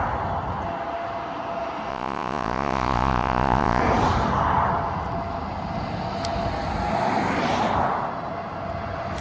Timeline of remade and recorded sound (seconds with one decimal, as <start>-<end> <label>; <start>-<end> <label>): 0.0-1.9 recorded; 1.9-3.8 remade; 3.8-9.2 recorded